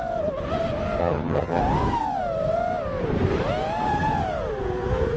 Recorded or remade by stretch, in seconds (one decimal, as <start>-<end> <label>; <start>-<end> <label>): 0.0-1.0 recorded; 1.0-1.6 remade; 1.6-5.2 recorded